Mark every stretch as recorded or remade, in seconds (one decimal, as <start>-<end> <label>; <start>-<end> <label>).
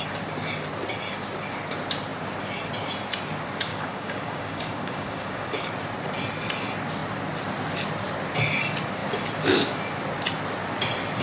0.0-3.7 recorded; 3.7-5.7 remade; 5.7-11.2 recorded